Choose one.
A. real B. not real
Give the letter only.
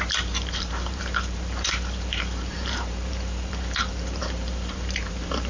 B